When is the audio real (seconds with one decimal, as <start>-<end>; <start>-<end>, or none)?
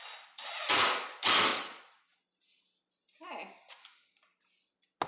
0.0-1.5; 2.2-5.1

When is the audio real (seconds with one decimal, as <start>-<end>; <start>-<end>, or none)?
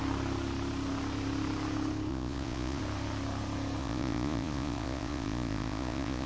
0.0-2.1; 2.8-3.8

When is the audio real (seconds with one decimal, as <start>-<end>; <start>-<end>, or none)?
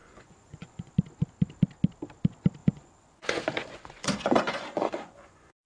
0.9-2.6